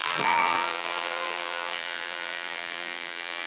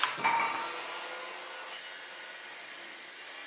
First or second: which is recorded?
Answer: second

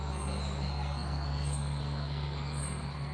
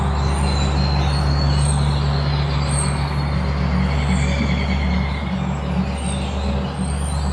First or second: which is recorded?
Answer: second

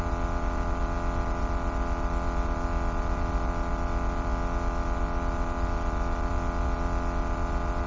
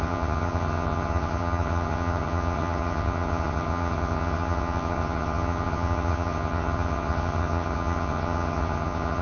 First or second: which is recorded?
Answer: first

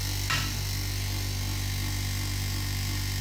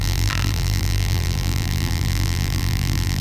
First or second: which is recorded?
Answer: first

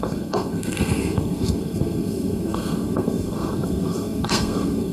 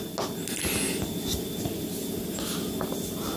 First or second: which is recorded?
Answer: second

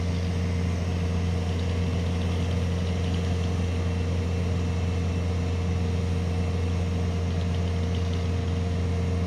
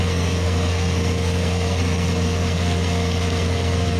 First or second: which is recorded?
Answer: first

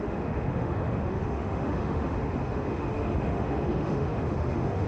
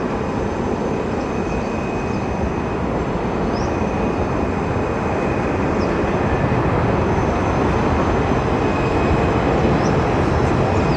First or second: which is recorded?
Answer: second